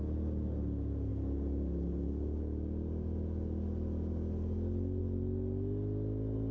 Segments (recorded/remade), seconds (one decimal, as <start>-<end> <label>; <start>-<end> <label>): 0.0-6.5 recorded